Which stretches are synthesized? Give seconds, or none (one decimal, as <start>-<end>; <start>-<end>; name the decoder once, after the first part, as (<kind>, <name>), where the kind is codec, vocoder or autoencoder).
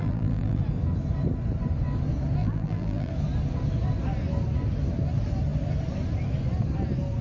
0.0-0.6 (vocoder, BigVGAN v2); 2.4-3.1